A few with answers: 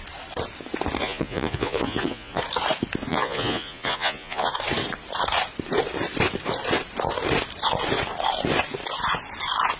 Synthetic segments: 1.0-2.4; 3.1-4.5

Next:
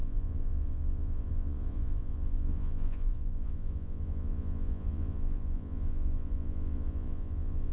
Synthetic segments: 0.0-7.7

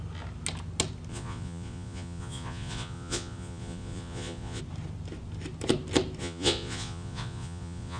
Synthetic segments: 1.1-4.6; 6.2-8.0

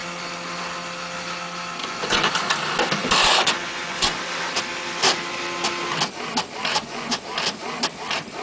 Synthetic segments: 1.8-2.3; 3.2-4.2; 6.7-7.2

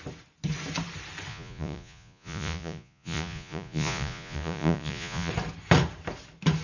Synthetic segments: 1.3-5.3

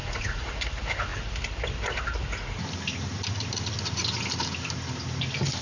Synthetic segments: 0.0-0.5